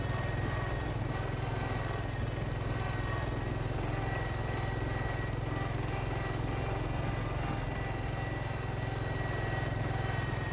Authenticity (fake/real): real